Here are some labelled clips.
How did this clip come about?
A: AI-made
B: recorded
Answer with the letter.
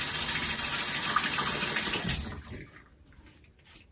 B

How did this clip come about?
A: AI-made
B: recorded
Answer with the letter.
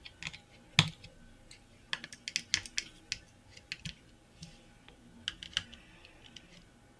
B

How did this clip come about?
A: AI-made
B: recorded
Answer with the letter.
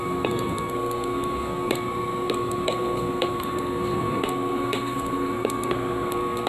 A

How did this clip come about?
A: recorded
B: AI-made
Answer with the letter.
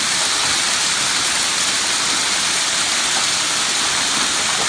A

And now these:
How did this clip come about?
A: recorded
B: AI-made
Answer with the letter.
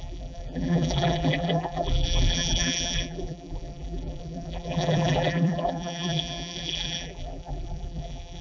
B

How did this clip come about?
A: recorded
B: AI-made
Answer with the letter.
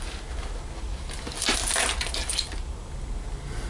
A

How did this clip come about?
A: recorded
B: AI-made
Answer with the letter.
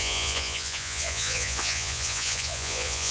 B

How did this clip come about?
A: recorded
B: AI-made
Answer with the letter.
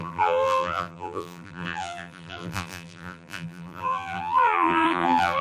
B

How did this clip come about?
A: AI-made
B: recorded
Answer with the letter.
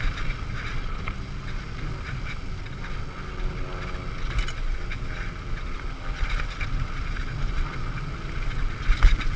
B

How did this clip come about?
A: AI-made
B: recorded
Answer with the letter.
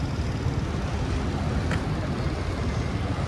B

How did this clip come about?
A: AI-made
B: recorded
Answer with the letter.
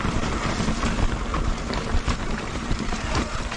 B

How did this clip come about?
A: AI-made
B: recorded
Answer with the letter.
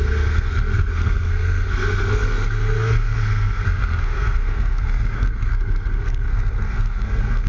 A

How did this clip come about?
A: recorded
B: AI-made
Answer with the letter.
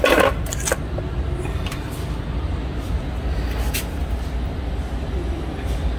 A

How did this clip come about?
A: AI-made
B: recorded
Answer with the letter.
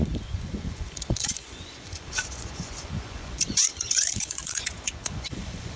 A